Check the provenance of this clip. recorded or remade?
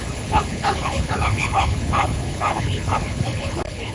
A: remade